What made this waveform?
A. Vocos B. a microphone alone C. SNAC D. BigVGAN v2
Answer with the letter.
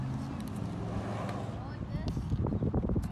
B